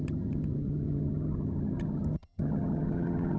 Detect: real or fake fake